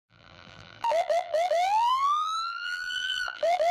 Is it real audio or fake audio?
fake